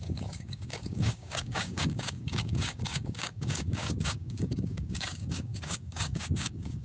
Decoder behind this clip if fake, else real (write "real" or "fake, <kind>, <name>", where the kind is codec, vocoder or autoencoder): fake, codec, DAC